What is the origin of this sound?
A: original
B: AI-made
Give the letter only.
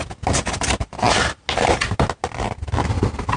A